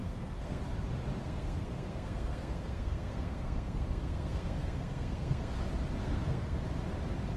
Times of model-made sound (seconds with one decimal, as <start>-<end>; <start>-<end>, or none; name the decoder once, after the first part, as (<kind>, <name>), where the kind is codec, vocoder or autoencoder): 0.0-0.6 (codec, SNAC); 1.2-5.5; 6.0-6.6